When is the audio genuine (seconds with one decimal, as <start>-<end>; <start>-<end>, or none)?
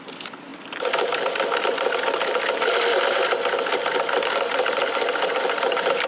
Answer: 0.0-6.1